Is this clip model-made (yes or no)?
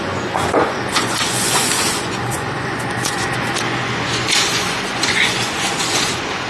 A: yes